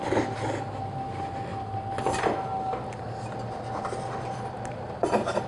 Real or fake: real